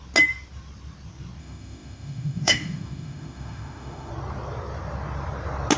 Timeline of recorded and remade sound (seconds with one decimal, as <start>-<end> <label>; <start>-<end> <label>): 0.0-1.4 recorded; 1.4-4.1 remade; 4.1-5.8 recorded